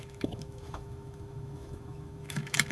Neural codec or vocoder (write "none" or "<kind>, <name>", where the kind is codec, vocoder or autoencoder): autoencoder, DAC-VAE